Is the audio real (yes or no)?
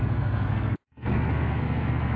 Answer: no